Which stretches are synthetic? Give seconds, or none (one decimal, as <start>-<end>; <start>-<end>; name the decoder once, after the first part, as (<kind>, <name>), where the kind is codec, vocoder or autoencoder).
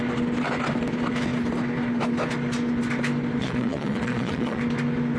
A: 3.4-4.6 (vocoder, Vocos)